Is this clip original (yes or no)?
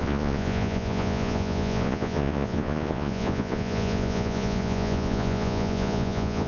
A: no